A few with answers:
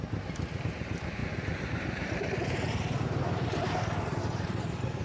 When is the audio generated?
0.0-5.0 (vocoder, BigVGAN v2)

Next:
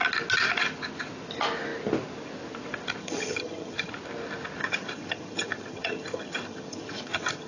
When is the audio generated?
3.0-3.9 (vocoder, HiFi-GAN); 4.6-7.5

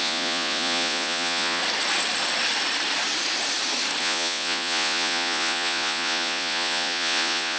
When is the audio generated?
0.0-1.6 (vocoder, Vocos); 4.0-7.6

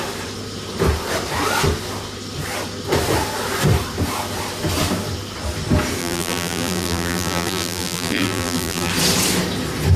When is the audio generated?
6.0-8.9 (vocoder, BigVGAN v2)

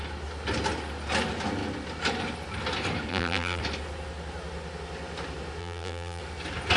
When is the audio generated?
3.1-3.6 (vocoder, BigVGAN v2); 5.6-6.2

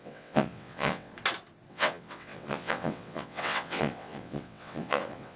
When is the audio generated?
0.0-1.1 (vocoder, WaveNeXt); 1.7-5.4